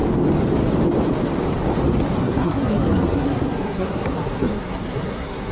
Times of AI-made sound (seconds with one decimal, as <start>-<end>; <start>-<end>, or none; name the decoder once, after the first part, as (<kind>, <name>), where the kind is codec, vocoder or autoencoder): 2.2-5.5 (codec, SNAC)